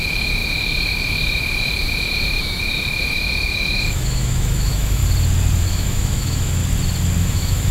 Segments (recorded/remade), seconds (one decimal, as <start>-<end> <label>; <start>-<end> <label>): 0.0-5.0 remade; 5.0-5.6 recorded; 5.6-6.6 remade; 6.6-7.2 recorded; 7.2-7.7 remade